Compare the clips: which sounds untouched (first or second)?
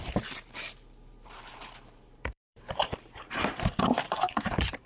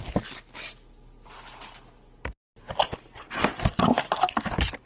second